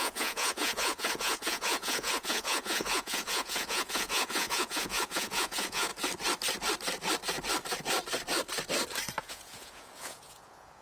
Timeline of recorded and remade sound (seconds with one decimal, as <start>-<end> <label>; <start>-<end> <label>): 0.0-5.9 remade; 5.9-9.2 recorded; 9.2-10.8 remade